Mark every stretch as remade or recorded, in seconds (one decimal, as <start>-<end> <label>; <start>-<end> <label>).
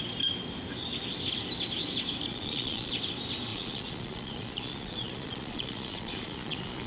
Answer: 0.0-2.3 recorded; 2.3-2.9 remade; 2.9-3.5 recorded; 3.5-6.9 remade